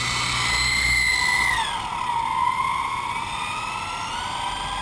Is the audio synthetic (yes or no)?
no